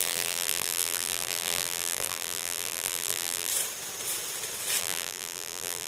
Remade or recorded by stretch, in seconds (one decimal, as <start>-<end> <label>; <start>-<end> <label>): 0.0-3.5 remade; 3.5-4.8 recorded; 4.8-5.9 remade